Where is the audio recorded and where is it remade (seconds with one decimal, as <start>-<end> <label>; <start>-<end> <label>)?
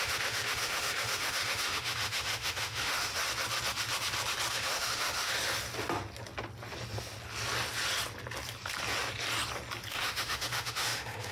0.0-3.1 remade; 3.1-4.5 recorded; 4.5-5.3 remade; 5.3-9.9 recorded; 9.9-11.3 remade